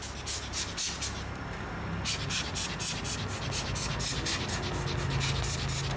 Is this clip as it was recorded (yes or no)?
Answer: yes